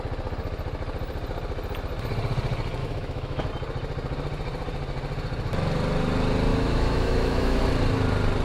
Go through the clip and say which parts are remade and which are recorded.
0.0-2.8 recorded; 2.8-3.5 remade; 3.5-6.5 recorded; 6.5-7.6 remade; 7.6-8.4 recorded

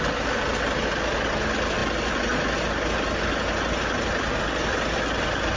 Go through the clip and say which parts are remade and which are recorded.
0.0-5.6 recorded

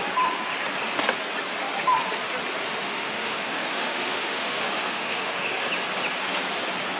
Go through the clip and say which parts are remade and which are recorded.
0.0-2.6 recorded; 2.6-5.7 remade; 5.7-7.0 recorded

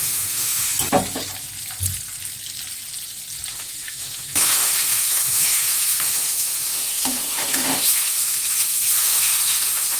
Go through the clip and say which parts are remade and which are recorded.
0.0-0.7 remade; 0.7-3.5 recorded; 3.5-10.0 remade